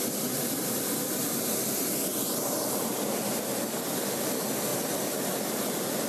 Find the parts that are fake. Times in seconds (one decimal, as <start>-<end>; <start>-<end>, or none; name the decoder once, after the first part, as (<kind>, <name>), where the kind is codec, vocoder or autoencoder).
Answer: none